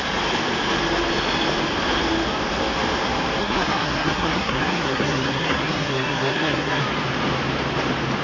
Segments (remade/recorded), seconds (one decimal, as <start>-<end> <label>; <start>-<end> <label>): 0.0-3.4 recorded; 3.4-6.8 remade; 6.8-8.2 recorded